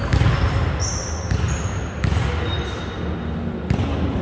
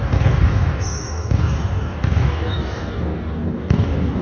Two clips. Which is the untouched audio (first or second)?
first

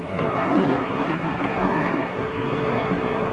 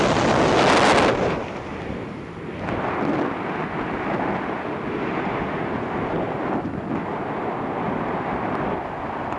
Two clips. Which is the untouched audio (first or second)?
second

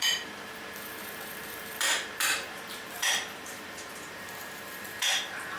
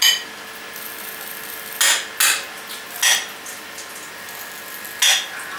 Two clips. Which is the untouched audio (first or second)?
second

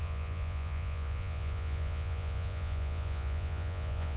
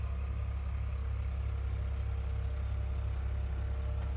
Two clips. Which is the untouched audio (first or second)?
second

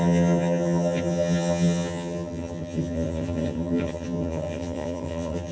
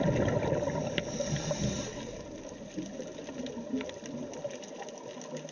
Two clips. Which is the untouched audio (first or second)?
second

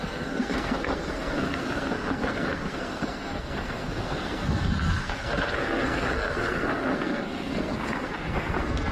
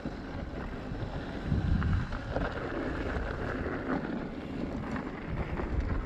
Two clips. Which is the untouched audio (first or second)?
second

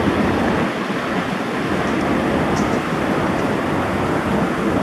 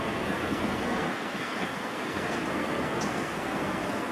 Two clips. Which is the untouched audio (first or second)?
first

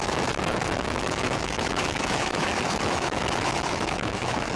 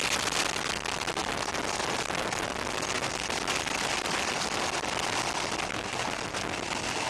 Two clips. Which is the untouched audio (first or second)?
second